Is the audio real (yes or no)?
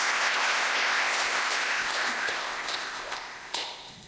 no